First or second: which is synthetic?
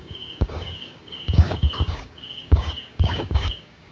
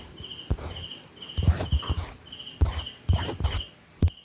first